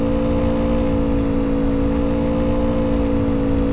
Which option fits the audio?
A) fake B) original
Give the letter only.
B